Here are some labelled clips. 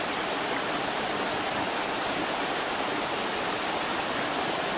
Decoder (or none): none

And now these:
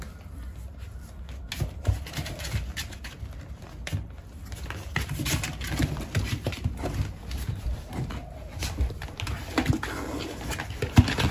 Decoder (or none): none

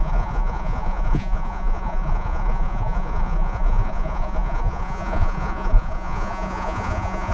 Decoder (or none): vocoder, Vocos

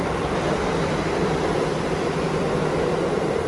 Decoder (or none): none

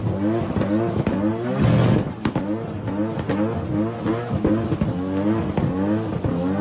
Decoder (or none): none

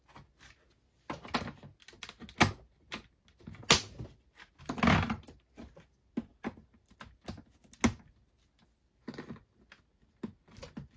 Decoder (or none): none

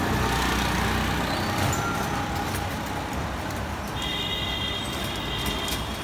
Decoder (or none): none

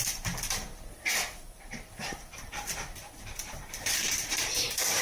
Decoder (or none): vocoder, BigVGAN v2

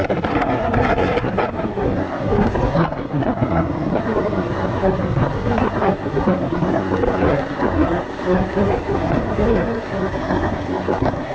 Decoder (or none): codec, SNAC